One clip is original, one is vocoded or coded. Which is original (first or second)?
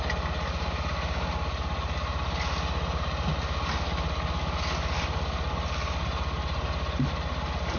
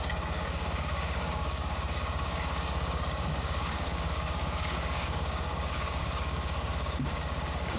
first